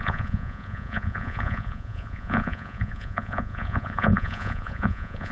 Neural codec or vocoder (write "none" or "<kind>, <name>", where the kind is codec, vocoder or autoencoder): vocoder, Vocos